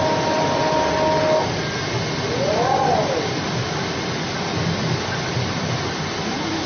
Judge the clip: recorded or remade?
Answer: recorded